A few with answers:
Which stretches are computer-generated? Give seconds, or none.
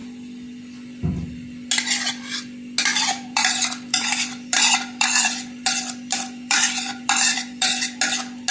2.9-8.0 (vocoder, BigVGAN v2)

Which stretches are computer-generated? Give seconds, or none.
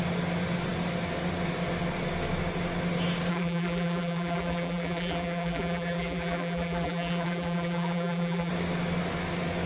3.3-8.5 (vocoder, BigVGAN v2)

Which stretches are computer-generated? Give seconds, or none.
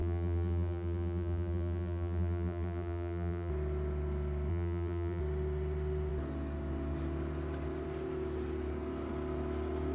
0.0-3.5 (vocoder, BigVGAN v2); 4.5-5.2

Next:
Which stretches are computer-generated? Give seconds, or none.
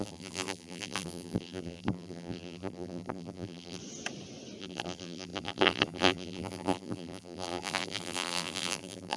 0.0-3.8 (vocoder, BigVGAN v2); 4.6-9.2